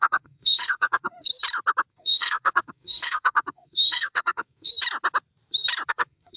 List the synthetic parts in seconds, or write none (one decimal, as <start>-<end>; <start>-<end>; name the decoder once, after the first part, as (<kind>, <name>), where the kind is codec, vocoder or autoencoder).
0.0-1.3 (codec, SNAC); 1.9-4.7; 5.9-6.4